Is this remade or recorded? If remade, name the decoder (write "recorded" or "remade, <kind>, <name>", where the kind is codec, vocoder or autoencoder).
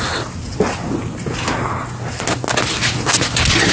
recorded